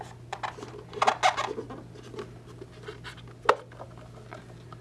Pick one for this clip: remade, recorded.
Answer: recorded